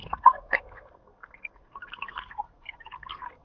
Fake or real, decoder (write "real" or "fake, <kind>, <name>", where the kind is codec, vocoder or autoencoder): fake, codec, SNAC